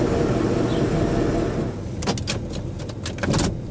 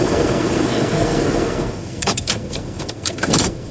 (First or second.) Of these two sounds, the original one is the first